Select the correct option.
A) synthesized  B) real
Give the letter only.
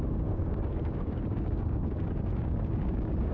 A